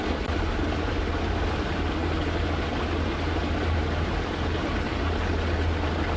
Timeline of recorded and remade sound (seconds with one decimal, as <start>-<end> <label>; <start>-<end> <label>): 0.0-6.2 recorded